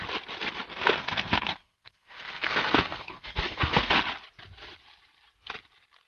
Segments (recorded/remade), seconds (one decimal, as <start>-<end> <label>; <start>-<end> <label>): 0.0-0.7 recorded; 0.7-3.9 remade; 3.9-6.1 recorded